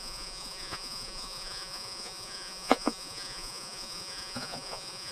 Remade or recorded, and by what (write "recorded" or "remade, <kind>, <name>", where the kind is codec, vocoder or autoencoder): remade, vocoder, Vocos